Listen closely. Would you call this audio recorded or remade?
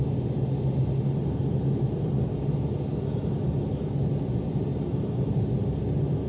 recorded